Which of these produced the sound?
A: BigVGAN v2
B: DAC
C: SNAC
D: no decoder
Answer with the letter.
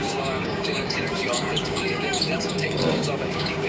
B